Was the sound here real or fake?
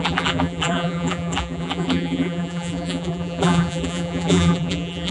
fake